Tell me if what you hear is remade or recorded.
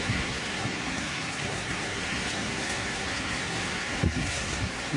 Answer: remade